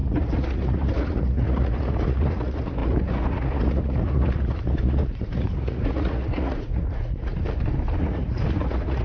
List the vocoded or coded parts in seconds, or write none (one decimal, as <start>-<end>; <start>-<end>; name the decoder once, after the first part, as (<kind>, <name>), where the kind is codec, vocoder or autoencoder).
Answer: 0.0-7.4 (vocoder, Vocos); 8.0-9.0